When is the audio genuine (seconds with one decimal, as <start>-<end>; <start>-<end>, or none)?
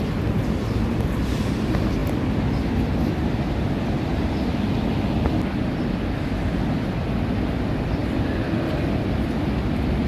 0.0-10.1